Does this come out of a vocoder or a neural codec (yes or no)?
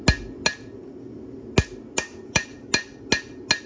no